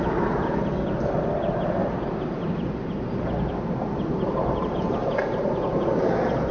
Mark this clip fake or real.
real